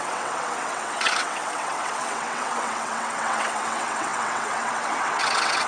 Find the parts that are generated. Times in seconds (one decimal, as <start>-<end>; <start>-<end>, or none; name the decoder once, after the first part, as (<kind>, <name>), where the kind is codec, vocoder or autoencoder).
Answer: 0.0-5.7 (vocoder, WaveNeXt)